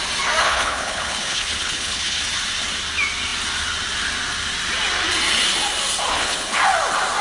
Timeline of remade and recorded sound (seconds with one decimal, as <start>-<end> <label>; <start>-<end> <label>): 0.0-0.4 recorded; 0.4-2.2 remade; 2.2-6.1 recorded; 6.1-6.6 remade; 6.6-7.2 recorded